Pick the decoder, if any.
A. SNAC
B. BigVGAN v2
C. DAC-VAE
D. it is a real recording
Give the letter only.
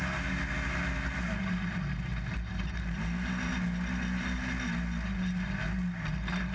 D